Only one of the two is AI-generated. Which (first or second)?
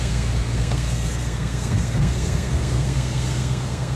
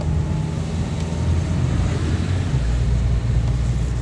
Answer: first